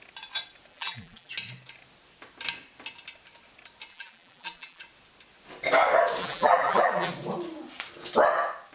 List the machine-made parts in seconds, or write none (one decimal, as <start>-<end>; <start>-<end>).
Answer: 0.7-1.3; 3.9-4.8; 6.2-7.1